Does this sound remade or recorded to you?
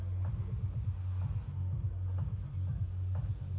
recorded